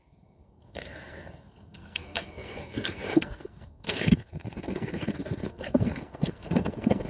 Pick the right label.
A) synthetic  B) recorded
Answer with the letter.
A